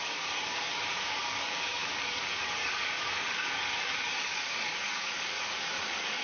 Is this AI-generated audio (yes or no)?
yes